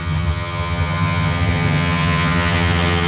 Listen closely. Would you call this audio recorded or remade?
remade